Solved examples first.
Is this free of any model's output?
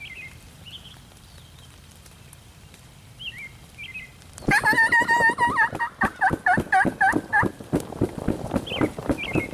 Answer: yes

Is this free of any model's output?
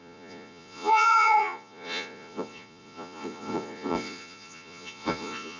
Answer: no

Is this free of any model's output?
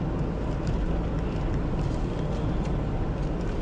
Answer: yes